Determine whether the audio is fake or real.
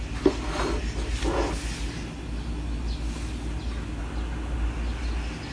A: real